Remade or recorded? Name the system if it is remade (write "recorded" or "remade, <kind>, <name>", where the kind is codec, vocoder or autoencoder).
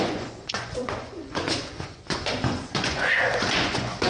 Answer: remade, vocoder, Vocos